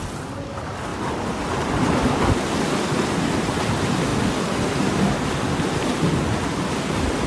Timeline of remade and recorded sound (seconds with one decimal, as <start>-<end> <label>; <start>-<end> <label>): 0.0-0.9 recorded; 0.9-2.5 remade; 2.5-7.3 recorded